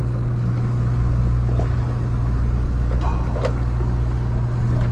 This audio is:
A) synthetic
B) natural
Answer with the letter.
B